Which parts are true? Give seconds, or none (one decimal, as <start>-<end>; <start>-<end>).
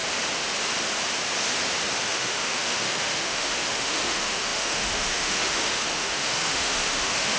0.0-2.0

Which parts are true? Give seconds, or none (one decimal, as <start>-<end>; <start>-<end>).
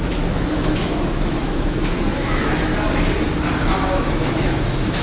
2.7-3.7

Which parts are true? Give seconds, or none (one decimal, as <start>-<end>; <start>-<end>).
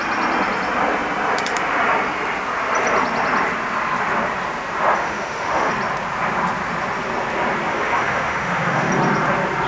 0.0-5.0; 5.7-7.7; 8.9-9.7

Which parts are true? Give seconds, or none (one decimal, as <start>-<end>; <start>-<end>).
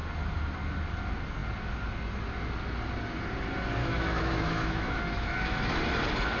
0.0-3.8; 5.8-6.4